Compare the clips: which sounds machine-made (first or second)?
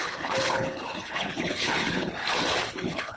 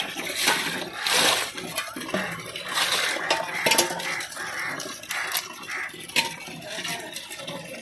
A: first